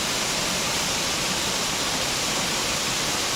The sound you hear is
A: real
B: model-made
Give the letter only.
A